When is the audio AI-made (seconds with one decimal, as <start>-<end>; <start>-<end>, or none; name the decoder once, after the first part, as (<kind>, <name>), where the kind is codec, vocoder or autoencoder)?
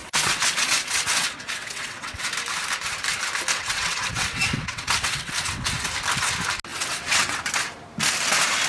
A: 0.0-2.3 (vocoder, WaveNeXt); 3.5-5.9; 6.7-7.4